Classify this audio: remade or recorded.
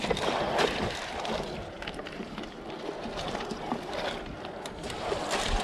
remade